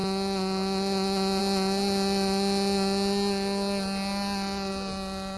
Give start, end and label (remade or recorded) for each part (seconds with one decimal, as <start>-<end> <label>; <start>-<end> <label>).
0.0-5.4 recorded